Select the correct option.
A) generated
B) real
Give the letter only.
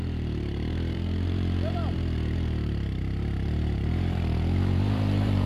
A